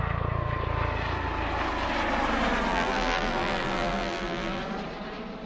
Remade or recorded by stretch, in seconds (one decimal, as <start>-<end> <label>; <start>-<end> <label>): 0.0-2.7 recorded; 2.7-4.6 remade; 4.6-5.5 recorded